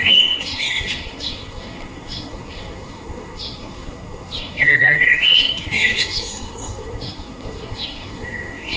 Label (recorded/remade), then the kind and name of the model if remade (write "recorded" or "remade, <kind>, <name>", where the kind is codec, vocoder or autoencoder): remade, codec, SNAC